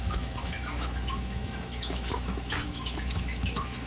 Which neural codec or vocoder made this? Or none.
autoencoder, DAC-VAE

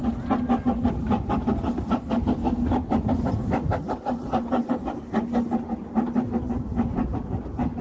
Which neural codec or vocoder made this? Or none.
none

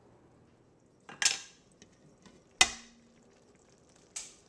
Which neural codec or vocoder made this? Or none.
none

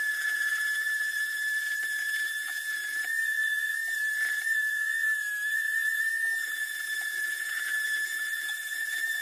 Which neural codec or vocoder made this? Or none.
vocoder, Vocos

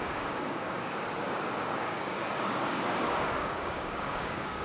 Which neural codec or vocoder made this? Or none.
codec, DAC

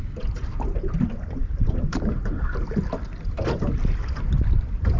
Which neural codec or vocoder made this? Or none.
vocoder, BigVGAN v2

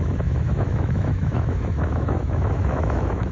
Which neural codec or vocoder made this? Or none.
autoencoder, DAC-VAE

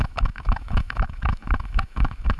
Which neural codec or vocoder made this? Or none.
autoencoder, DAC-VAE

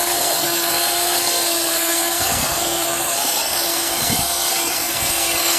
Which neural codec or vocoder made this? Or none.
codec, SNAC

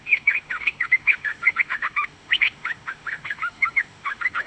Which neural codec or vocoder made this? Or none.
autoencoder, DAC-VAE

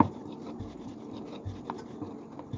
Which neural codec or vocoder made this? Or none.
none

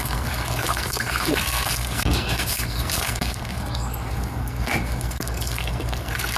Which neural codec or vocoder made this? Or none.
codec, SNAC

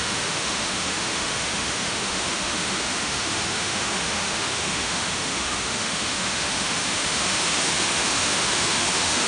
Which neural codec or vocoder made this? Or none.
autoencoder, DAC-VAE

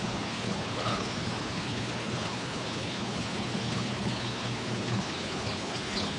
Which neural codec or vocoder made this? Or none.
codec, HILCodec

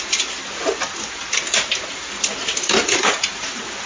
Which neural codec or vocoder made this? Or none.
none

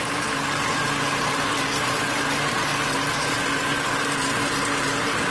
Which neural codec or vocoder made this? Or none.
none